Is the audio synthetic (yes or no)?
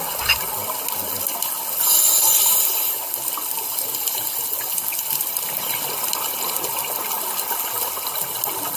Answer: no